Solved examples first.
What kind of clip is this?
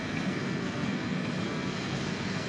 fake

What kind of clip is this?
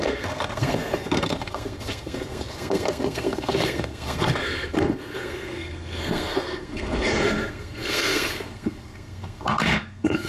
fake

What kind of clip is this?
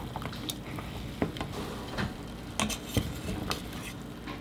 real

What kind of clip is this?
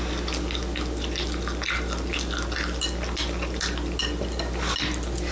real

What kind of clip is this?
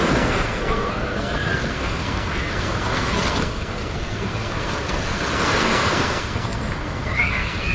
fake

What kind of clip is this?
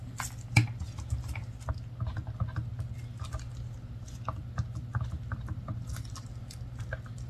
real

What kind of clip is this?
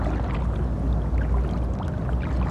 real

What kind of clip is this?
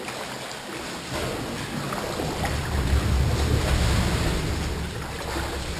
real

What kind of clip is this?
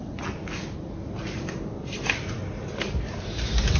real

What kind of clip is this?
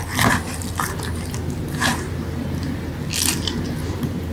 real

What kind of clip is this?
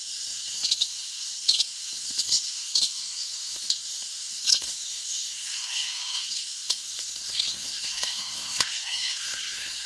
fake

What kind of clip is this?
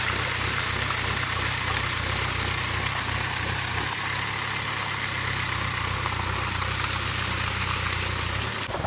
real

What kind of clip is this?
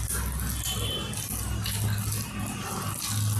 real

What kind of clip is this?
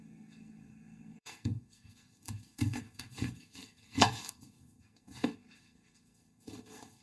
fake